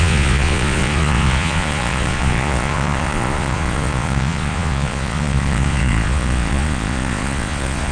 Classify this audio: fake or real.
fake